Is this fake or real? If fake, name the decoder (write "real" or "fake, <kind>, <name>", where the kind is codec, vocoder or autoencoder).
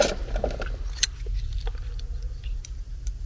real